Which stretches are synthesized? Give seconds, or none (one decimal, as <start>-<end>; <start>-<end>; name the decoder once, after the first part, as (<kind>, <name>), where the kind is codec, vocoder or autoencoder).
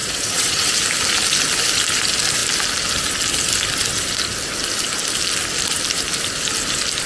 0.0-0.7 (vocoder, WaveNeXt)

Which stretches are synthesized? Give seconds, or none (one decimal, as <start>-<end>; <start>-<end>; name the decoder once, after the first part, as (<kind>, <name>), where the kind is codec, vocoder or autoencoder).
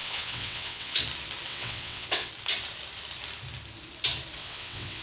0.0-1.0 (vocoder, WaveNeXt); 1.5-2.3; 4.4-5.0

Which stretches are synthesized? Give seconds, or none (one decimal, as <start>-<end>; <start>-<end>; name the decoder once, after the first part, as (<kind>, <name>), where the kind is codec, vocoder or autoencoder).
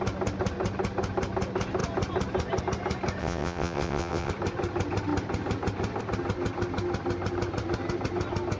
3.2-4.3 (vocoder, WaveNeXt)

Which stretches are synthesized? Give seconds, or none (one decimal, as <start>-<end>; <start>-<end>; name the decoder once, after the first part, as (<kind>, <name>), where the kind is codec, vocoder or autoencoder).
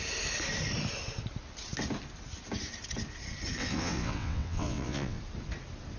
3.6-5.2 (vocoder, WaveNeXt)